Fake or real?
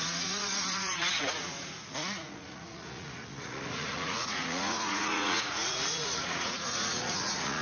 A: fake